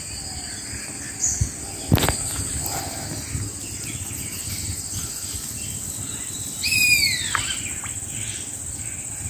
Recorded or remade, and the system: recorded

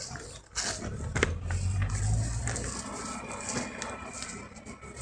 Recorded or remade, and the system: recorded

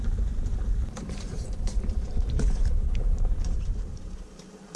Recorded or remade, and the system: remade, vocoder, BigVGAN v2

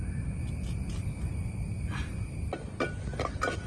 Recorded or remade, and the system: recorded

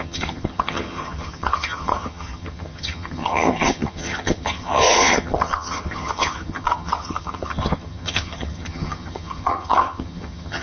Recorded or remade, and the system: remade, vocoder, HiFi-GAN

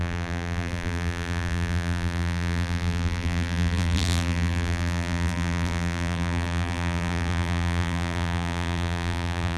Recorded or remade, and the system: remade, vocoder, BigVGAN v2